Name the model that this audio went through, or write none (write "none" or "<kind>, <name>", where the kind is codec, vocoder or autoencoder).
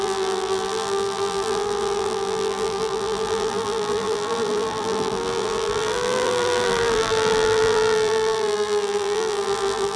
vocoder, BigVGAN v2